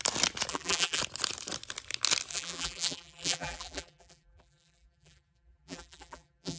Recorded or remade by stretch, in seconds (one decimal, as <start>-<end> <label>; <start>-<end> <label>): 0.0-0.5 recorded; 0.5-1.0 remade; 1.0-2.3 recorded; 2.3-6.6 remade